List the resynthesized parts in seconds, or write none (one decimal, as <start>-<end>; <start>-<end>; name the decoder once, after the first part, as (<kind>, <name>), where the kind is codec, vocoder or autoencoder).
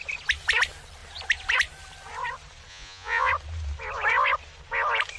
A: 2.7-3.3 (vocoder, Vocos)